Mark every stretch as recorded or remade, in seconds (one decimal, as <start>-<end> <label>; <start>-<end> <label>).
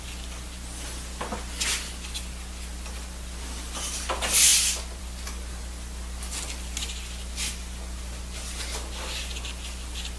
0.0-10.2 recorded